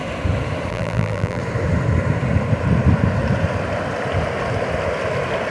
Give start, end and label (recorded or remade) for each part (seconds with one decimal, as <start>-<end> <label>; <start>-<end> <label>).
0.0-0.7 recorded; 0.7-1.4 remade; 1.4-5.5 recorded